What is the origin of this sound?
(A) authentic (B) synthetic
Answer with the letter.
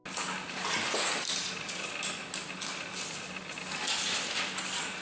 A